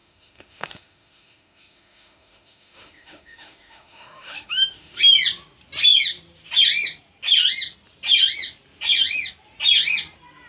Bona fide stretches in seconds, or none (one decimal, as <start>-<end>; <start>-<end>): 5.0-10.5